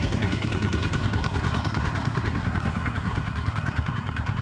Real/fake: fake